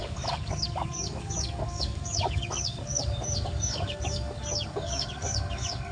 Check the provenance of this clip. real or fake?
fake